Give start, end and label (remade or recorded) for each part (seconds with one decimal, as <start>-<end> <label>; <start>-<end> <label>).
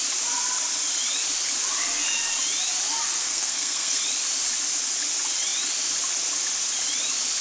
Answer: 0.0-3.2 recorded; 3.2-4.0 remade; 4.0-7.4 recorded